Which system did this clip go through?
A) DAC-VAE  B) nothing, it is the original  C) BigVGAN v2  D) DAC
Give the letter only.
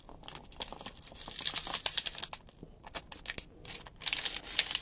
B